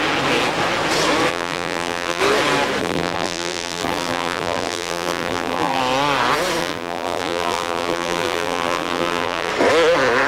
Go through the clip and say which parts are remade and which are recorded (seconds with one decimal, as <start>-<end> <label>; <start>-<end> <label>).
0.0-1.3 recorded; 1.3-2.2 remade; 2.2-2.8 recorded; 2.8-5.8 remade; 5.8-6.6 recorded; 6.6-9.5 remade; 9.5-10.3 recorded